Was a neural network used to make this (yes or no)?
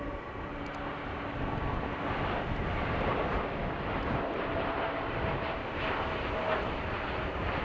no